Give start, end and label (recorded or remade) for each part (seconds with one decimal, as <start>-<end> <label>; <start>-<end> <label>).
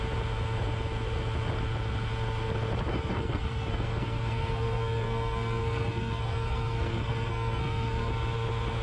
0.0-2.9 recorded; 2.9-8.1 remade; 8.1-8.8 recorded